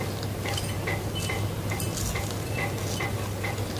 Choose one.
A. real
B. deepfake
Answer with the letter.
A